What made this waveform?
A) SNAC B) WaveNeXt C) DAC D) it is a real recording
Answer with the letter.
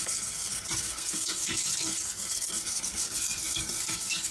A